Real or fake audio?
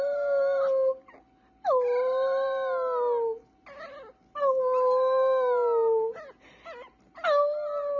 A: real